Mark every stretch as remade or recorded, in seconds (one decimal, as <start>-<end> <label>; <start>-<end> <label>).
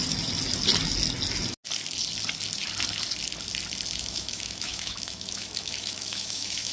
0.0-4.0 recorded; 4.0-6.7 remade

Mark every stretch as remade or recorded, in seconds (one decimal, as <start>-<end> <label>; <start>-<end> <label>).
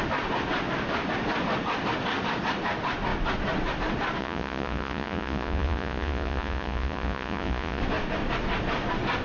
0.0-4.2 recorded; 4.2-7.8 remade; 7.8-9.2 recorded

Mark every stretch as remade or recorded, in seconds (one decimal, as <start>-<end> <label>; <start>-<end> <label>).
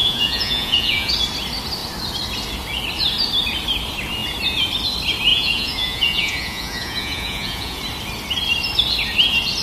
0.0-1.1 remade; 1.1-5.3 recorded; 5.3-7.8 remade; 7.8-9.6 recorded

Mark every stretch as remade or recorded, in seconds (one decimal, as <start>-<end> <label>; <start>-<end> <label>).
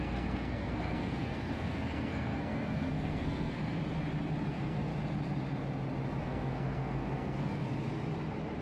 0.0-3.8 remade; 3.8-4.5 recorded; 4.5-4.9 remade; 4.9-6.2 recorded; 6.2-7.7 remade; 7.7-8.6 recorded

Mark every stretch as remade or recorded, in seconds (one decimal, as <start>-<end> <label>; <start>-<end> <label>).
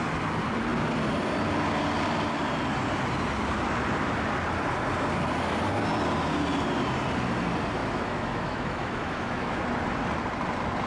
0.0-7.8 recorded; 7.8-9.6 remade; 9.6-10.9 recorded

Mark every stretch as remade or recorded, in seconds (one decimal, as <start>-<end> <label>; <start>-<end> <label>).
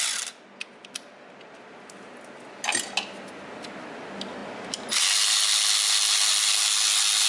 0.0-7.3 recorded